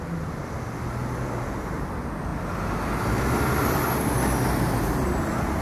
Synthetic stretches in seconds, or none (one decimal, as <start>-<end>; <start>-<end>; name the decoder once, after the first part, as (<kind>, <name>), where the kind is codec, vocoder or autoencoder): none